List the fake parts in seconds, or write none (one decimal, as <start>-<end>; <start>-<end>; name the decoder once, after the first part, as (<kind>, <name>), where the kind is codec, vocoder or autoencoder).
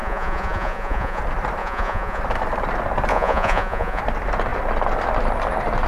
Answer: 0.0-1.2 (vocoder, Vocos); 1.6-2.2; 3.1-4.0